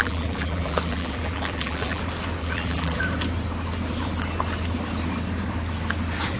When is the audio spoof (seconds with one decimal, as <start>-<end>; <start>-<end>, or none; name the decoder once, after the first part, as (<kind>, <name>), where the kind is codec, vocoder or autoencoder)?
0.0-2.0 (vocoder, BigVGAN v2); 2.4-3.0